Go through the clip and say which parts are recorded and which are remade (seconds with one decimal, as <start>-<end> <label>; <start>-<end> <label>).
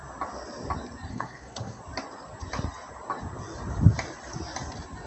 0.0-1.1 recorded; 1.1-1.8 remade; 1.8-5.1 recorded